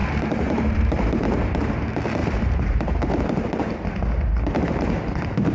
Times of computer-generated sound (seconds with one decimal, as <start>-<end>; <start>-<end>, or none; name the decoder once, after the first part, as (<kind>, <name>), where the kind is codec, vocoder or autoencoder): 0.0-1.5 (vocoder, BigVGAN v2); 2.2-3.2